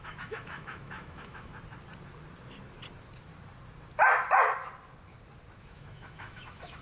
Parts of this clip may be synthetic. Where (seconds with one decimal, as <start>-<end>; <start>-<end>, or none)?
0.0-1.5; 5.6-6.8